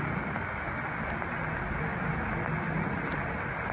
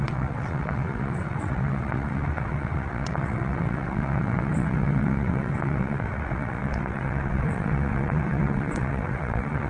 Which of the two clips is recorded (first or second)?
first